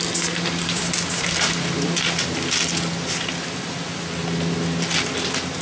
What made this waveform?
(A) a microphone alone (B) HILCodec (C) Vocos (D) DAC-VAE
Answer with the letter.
A